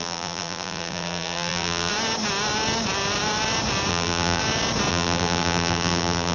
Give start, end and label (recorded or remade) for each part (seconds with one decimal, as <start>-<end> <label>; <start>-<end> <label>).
0.0-1.9 remade; 1.9-3.9 recorded; 3.9-4.4 remade; 4.4-4.9 recorded; 4.9-6.3 remade